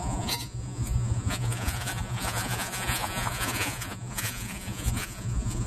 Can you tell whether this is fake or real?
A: fake